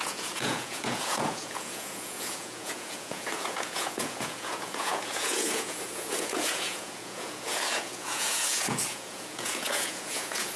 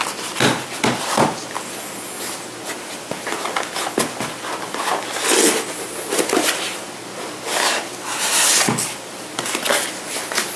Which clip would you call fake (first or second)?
first